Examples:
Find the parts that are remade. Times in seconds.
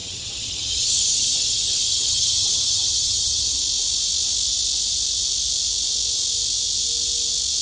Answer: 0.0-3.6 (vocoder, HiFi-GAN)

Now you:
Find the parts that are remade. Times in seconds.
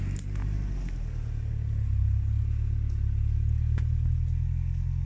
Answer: none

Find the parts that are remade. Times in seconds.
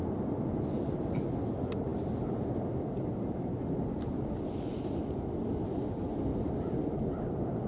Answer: 6.3-7.0 (vocoder, BigVGAN v2)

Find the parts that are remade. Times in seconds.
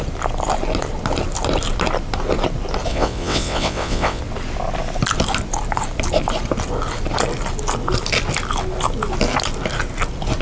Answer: 2.9-4.2 (vocoder, WaveNeXt)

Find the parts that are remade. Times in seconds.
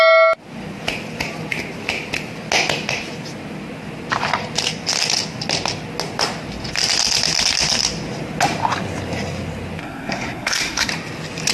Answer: 9.8-10.9 (codec, SNAC)